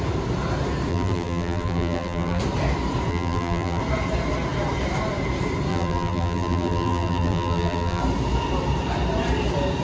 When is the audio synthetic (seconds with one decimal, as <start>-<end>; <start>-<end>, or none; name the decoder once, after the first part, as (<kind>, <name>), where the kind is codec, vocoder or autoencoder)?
0.9-2.4 (vocoder, BigVGAN v2); 3.1-3.8; 5.7-8.0